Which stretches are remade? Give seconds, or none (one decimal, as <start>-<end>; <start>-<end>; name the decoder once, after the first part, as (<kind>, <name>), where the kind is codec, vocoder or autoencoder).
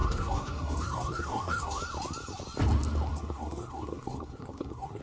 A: 0.0-1.8 (codec, SNAC); 3.1-5.0